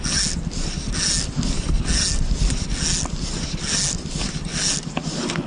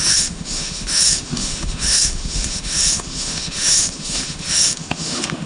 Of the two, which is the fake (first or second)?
second